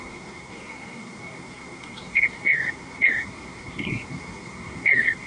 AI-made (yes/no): yes